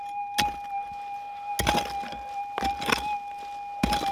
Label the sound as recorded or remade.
recorded